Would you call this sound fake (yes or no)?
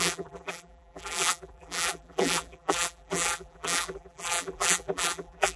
yes